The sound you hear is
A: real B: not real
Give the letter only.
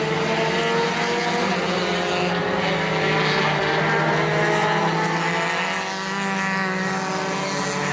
A